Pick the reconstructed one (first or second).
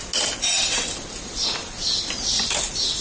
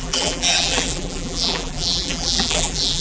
second